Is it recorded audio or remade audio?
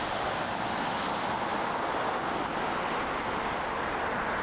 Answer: recorded